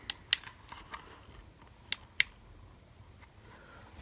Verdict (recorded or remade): recorded